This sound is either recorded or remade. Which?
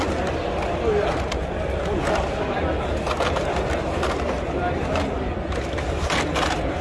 recorded